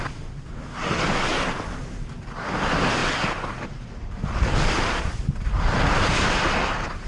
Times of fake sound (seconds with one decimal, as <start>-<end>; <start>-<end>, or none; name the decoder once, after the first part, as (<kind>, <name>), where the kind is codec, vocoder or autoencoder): none